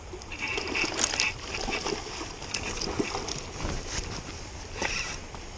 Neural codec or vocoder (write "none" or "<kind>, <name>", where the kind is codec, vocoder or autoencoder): none